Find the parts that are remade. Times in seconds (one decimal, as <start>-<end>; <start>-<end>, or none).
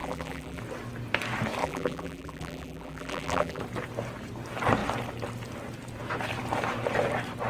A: 0.0-0.6; 1.6-3.6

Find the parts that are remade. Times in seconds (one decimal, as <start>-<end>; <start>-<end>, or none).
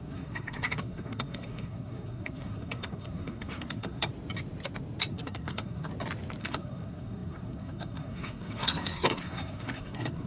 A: 0.0-4.1; 5.1-5.9; 6.4-10.3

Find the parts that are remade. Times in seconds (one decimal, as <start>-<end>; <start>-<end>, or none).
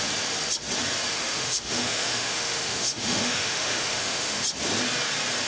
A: 1.1-4.4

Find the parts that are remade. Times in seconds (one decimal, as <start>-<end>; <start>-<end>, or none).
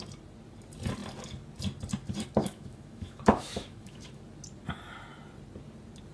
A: 2.4-4.2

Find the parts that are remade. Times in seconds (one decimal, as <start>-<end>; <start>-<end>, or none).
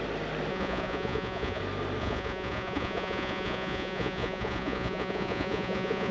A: 0.5-1.6; 2.0-6.1